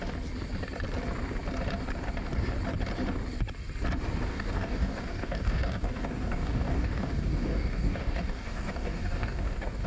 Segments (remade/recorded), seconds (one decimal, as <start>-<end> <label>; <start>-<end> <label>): 0.0-4.3 recorded; 4.3-9.9 remade